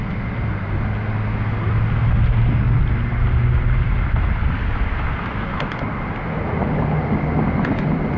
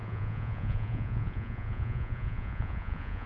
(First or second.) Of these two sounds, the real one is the first